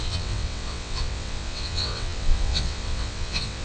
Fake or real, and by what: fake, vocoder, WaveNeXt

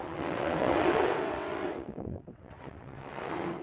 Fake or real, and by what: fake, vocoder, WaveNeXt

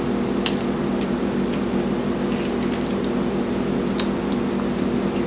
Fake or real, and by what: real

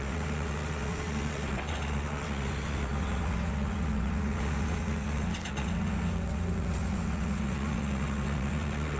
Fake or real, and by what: fake, vocoder, WaveNeXt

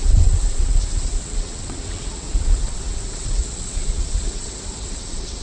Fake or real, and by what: fake, vocoder, WaveNeXt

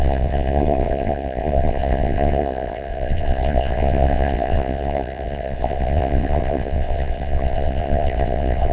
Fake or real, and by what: fake, vocoder, WaveNeXt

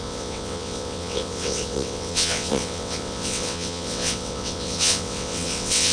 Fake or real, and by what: fake, vocoder, WaveNeXt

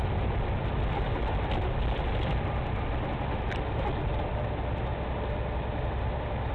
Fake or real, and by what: real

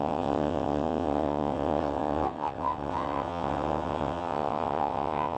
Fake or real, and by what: fake, vocoder, WaveNeXt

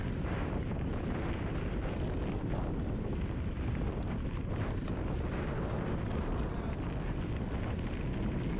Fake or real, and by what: real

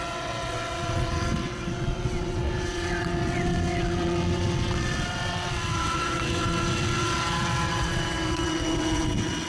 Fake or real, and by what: fake, vocoder, WaveNeXt